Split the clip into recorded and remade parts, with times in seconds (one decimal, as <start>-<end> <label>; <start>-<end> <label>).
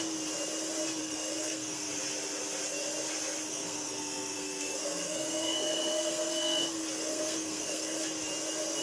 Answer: 0.0-1.0 recorded; 1.0-1.9 remade; 1.9-3.5 recorded; 3.5-8.0 remade; 8.0-8.8 recorded